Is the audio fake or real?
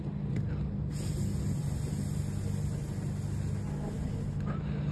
real